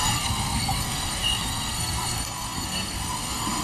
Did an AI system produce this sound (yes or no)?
yes